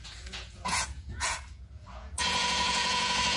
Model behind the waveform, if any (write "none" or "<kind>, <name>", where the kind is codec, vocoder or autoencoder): vocoder, Vocos